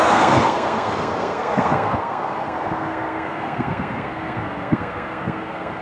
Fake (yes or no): yes